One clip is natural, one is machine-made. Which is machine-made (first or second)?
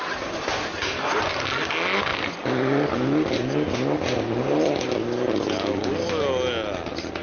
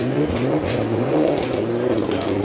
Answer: second